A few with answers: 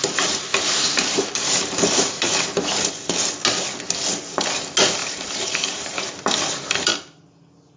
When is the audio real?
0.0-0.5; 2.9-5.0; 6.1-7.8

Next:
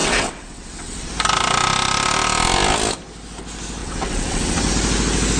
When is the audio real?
1.1-3.8; 4.7-5.4

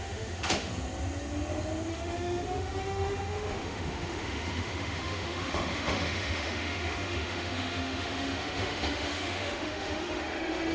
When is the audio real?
0.7-1.9